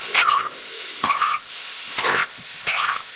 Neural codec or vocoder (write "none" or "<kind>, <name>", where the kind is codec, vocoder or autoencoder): codec, ZipCodec